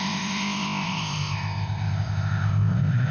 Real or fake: fake